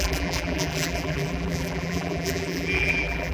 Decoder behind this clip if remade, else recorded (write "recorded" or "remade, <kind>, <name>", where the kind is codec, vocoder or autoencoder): remade, vocoder, BigVGAN v2